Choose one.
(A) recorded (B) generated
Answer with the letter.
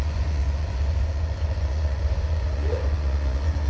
B